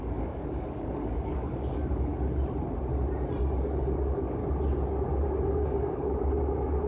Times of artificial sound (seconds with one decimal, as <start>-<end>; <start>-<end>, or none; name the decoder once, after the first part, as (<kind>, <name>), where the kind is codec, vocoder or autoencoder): 0.0-2.1 (codec, DAC); 3.6-4.4; 5.5-6.9